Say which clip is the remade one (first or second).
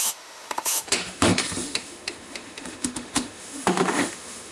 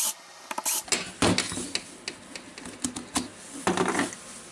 first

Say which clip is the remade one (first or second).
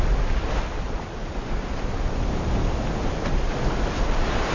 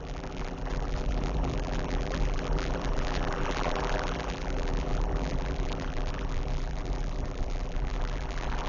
second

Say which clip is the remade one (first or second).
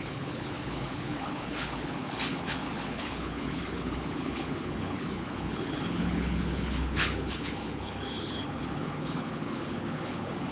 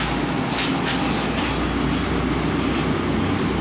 first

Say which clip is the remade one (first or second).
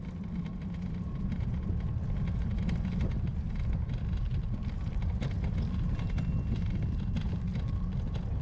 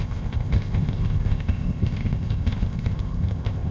second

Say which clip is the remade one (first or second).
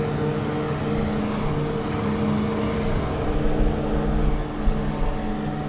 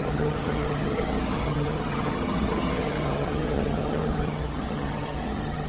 second